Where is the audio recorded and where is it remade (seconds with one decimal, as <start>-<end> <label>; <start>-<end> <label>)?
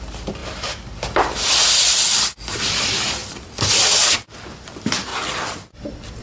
0.0-6.2 remade